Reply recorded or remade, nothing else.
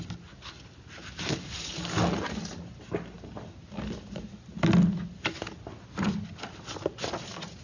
recorded